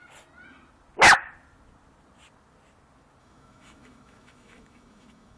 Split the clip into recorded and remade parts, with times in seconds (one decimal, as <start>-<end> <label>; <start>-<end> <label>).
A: 0.0-3.2 recorded; 3.2-5.4 remade